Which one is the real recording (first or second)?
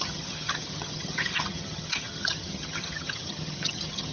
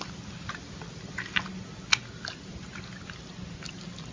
second